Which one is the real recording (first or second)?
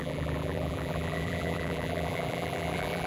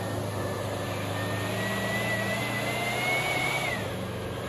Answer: second